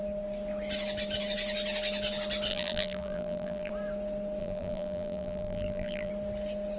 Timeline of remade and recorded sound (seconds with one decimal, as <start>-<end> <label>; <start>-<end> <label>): 0.0-2.5 recorded; 2.5-3.7 remade; 3.7-4.4 recorded; 4.4-6.1 remade; 6.1-6.8 recorded